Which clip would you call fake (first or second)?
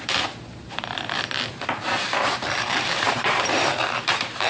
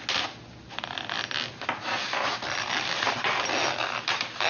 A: first